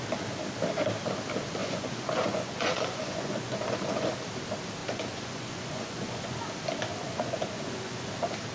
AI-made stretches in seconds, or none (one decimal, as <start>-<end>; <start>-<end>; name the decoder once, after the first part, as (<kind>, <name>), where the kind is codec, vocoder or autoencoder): 1.6-4.1 (vocoder, Vocos); 4.8-6.4; 7.0-8.1